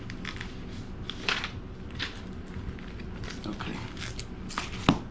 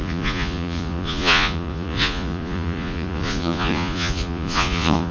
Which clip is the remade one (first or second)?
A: second